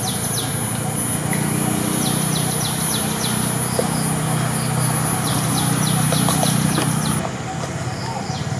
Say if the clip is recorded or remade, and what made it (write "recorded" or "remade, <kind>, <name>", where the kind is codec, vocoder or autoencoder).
recorded